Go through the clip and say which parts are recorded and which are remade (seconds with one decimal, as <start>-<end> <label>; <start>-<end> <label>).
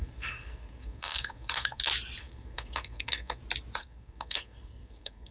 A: 0.0-1.8 remade; 1.8-2.2 recorded; 2.2-3.4 remade; 3.4-3.8 recorded; 3.8-5.3 remade